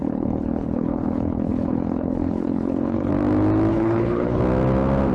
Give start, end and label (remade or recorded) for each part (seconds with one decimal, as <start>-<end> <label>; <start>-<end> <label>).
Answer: 0.0-3.1 remade; 3.1-3.7 recorded; 3.7-4.4 remade; 4.4-5.1 recorded

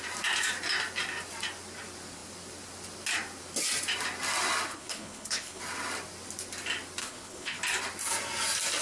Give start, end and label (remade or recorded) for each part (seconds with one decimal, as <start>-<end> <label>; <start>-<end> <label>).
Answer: 0.0-4.7 recorded; 4.7-5.6 remade; 5.6-7.0 recorded; 7.0-7.6 remade; 7.6-8.8 recorded

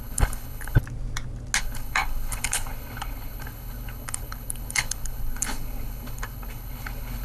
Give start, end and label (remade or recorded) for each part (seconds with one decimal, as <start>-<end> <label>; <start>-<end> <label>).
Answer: 0.0-0.8 remade; 0.8-1.6 recorded; 1.6-7.2 remade

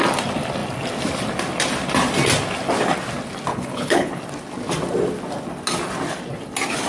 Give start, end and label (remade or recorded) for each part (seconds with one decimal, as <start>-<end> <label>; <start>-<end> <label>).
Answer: 0.0-3.5 recorded; 3.5-4.2 remade; 4.2-6.9 recorded